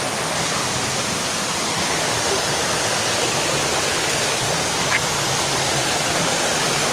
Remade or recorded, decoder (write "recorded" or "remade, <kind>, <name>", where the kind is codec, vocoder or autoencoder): recorded